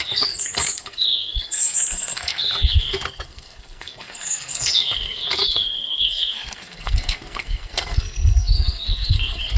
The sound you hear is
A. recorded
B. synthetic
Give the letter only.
B